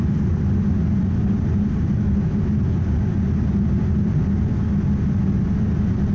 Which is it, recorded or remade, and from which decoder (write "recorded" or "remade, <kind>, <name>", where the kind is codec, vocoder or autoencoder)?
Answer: recorded